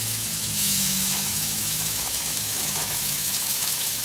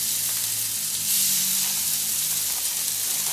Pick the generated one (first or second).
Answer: first